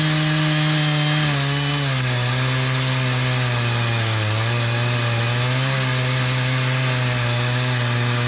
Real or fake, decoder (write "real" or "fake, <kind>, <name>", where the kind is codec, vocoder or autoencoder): real